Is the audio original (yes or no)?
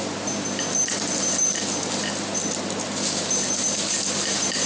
yes